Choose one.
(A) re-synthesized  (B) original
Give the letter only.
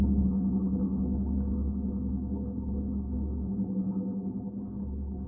A